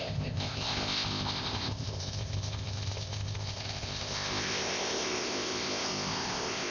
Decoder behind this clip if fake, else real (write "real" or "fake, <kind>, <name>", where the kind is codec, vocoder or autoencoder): fake, codec, ZipCodec